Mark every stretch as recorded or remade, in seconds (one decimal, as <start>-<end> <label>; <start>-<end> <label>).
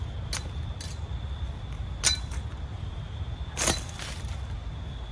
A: 0.0-2.7 recorded; 2.7-3.6 remade; 3.6-5.1 recorded